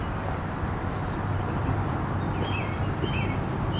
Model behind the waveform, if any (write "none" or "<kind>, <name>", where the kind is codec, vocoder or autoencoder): none